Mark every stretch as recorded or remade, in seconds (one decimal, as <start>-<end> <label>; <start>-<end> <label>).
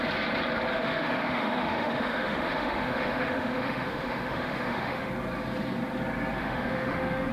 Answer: 0.0-0.7 recorded; 0.7-5.1 remade; 5.1-6.4 recorded; 6.4-7.3 remade